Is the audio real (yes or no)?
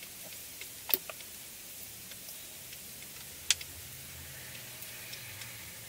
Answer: yes